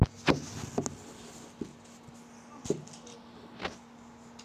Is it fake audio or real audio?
real